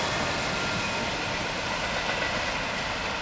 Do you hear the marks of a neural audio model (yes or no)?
no